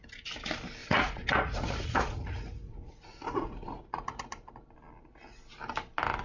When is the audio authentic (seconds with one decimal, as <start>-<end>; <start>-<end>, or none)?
0.0-0.8; 4.5-6.2